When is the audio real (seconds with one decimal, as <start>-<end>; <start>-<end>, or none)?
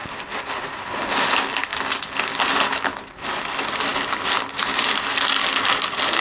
0.0-6.2